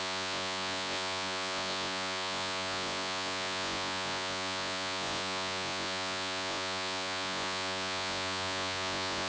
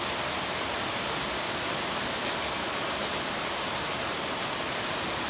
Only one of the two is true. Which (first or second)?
second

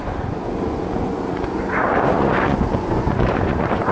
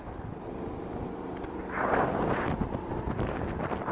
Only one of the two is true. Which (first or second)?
second